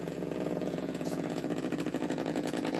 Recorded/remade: remade